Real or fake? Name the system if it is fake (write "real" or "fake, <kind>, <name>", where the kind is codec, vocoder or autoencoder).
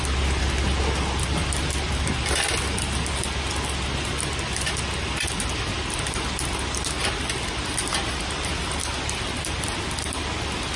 real